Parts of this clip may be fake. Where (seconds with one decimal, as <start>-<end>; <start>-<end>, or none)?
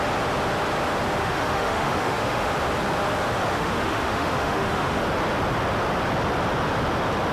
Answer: 1.2-2.5; 3.5-5.0